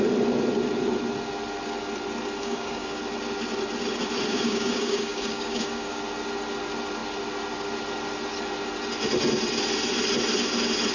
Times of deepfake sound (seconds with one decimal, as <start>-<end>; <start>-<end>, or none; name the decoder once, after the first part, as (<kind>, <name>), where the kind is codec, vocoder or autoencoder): 2.4-3.0 (codec, DAC); 4.3-6.0